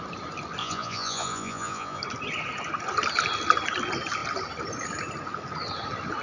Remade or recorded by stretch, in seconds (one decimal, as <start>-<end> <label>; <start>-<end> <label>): 0.0-0.6 recorded; 0.6-2.0 remade; 2.0-6.2 recorded